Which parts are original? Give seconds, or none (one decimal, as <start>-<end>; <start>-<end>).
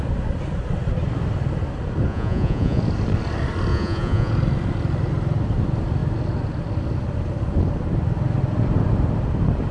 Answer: 0.0-2.1; 2.8-3.7; 4.3-9.7